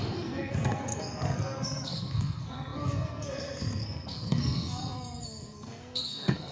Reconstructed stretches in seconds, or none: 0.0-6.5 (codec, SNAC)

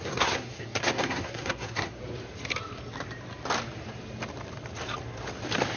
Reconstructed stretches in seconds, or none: 0.0-2.0 (codec, SNAC)

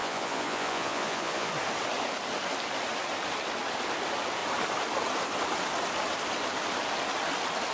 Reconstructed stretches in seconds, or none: 0.0-1.5 (vocoder, Vocos)

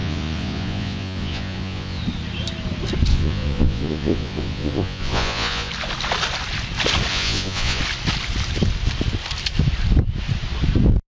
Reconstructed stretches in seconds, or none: 0.0-2.0 (vocoder, Vocos); 3.1-5.7; 7.1-7.8